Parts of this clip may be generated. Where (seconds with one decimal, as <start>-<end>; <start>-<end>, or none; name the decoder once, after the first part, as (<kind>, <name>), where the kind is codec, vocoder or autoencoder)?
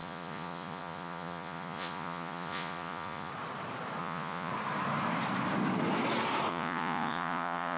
0.0-3.3 (vocoder, Vocos); 4.0-4.5; 6.5-7.8